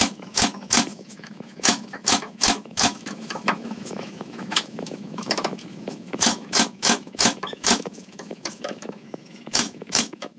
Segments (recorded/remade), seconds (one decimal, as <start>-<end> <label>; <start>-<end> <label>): 0.0-10.4 remade